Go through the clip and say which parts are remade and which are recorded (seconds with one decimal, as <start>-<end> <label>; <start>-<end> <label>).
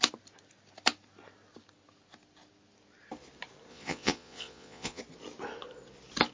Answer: 0.0-3.7 recorded; 3.7-5.0 remade; 5.0-6.3 recorded